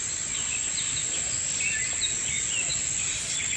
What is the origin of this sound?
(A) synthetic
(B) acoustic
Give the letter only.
B